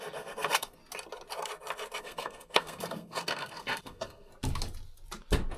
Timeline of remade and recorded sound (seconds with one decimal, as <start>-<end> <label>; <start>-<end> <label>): 0.0-0.8 remade; 0.8-2.0 recorded; 2.0-4.3 remade; 4.3-5.6 recorded